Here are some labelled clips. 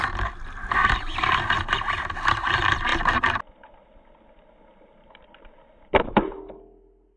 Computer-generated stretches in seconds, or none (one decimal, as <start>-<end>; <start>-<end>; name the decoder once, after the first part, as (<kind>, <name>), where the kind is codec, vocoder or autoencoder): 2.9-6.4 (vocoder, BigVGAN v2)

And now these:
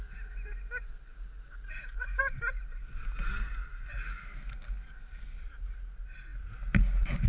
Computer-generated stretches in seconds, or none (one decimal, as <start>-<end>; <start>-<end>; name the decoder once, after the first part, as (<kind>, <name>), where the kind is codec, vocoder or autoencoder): none

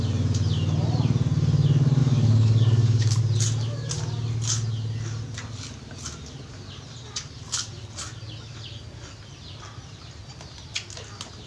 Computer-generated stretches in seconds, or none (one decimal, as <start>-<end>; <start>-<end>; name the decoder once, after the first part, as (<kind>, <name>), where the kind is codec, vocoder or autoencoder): 2.0-3.2 (codec, DAC)

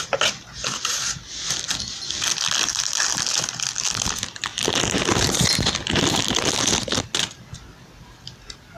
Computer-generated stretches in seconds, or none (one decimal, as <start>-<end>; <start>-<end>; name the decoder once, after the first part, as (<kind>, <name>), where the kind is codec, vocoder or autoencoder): none

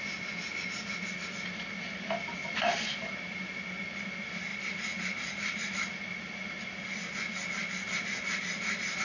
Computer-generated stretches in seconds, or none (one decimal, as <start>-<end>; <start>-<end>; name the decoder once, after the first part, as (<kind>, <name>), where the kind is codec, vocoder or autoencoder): 2.4-3.6 (vocoder, BigVGAN v2); 4.5-5.6

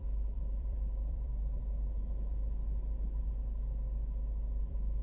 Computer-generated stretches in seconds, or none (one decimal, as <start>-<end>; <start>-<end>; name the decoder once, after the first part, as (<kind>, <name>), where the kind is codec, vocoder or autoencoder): 0.0-1.6 (vocoder, BigVGAN v2); 4.6-5.0